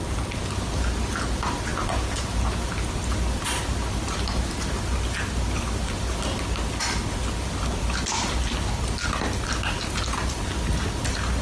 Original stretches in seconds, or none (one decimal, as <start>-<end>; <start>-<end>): 0.0-11.4